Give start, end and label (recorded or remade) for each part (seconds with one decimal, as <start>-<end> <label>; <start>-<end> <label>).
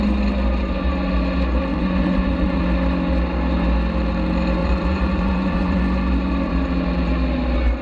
0.0-1.7 recorded; 1.7-2.6 remade; 2.6-4.6 recorded; 4.6-5.8 remade; 5.8-7.8 recorded